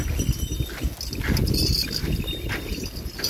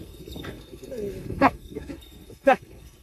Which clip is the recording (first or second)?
first